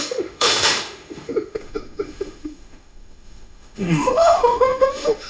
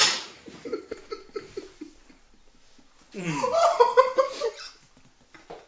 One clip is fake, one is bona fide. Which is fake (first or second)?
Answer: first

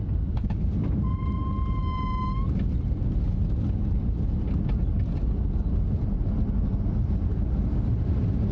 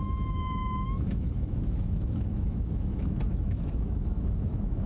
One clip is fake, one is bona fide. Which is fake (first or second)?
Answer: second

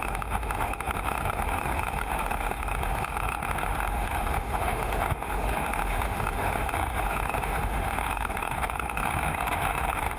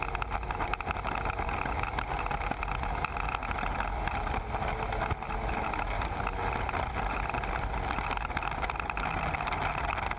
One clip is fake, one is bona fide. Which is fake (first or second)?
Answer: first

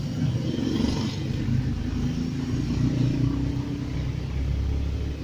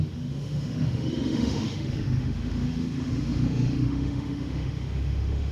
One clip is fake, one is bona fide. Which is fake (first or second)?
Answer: second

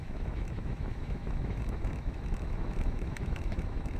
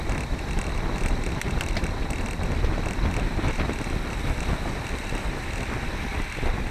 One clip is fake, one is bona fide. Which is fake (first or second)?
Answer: first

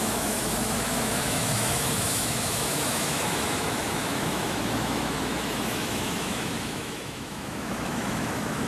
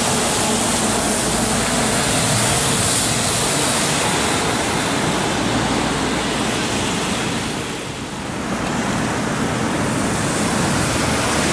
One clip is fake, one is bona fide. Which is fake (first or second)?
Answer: first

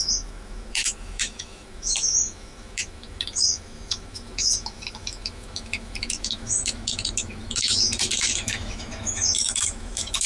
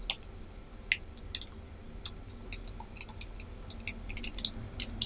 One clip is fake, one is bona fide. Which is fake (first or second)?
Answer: first